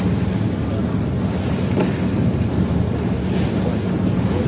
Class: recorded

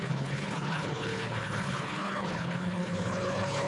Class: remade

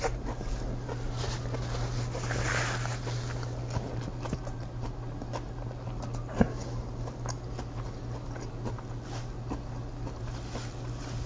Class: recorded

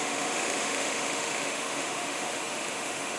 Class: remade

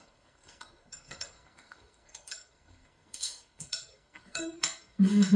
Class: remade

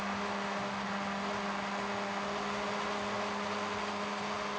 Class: recorded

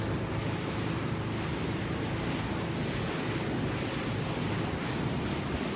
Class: recorded